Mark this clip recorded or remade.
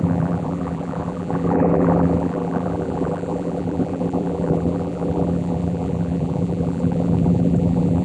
remade